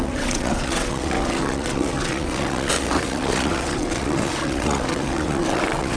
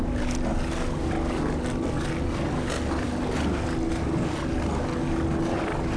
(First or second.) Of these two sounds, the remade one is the first